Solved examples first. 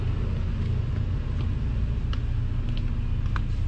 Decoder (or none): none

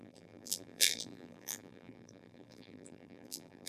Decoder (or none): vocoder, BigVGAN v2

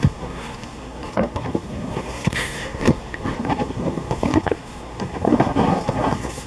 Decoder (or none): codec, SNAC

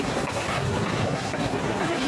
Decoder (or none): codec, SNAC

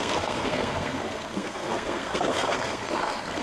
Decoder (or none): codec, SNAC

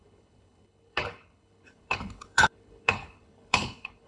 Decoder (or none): codec, HILCodec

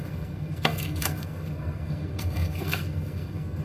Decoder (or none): codec, SNAC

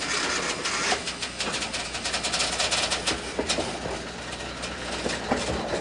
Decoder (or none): none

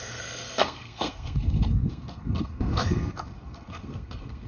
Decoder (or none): codec, SNAC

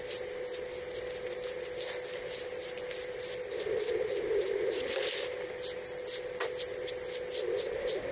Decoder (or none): none